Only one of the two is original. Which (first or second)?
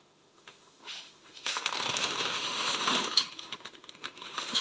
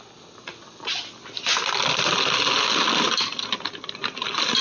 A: second